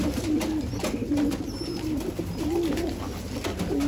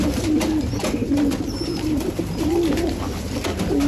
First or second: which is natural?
first